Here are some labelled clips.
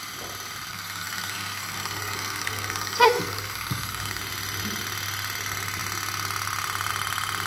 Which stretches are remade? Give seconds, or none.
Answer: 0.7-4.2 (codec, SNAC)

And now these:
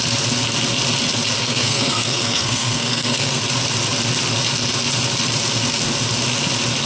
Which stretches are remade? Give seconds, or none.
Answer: 1.4-3.4 (codec, SNAC)

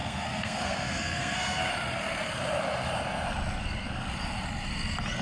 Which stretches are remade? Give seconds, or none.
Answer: 0.0-1.7 (codec, SNAC)

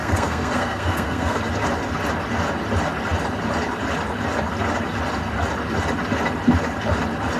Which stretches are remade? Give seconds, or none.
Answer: 0.0-1.4 (codec, SNAC)